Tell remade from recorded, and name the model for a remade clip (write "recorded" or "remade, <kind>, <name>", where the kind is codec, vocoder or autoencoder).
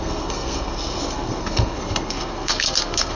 remade, codec, SNAC